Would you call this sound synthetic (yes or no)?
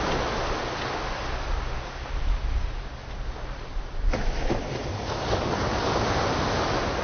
no